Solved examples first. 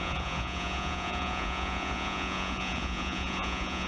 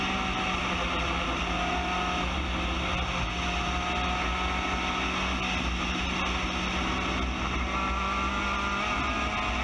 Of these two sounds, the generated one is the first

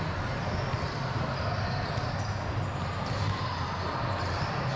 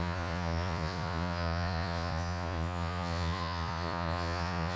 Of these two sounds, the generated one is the second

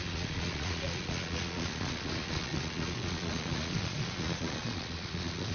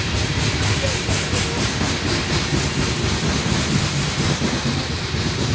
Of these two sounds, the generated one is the first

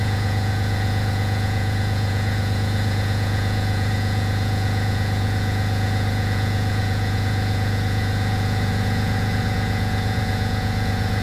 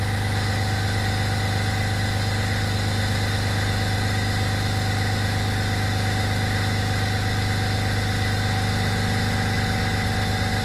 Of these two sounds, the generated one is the first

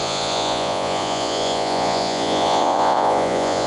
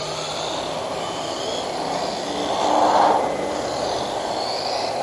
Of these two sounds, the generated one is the first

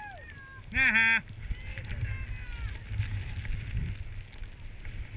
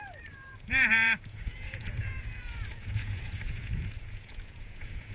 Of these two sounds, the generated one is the second